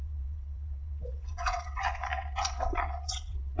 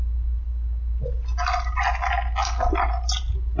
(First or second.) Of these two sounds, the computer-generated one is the first